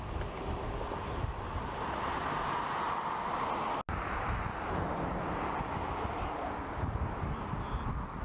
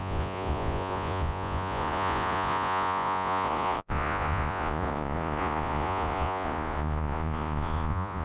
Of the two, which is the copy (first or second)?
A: second